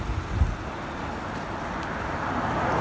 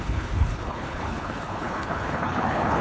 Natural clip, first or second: first